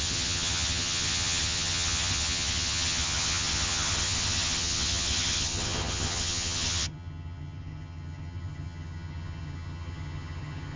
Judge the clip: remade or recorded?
remade